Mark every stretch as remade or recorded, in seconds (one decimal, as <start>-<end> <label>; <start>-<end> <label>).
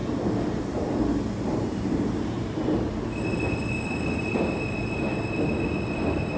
0.0-6.4 recorded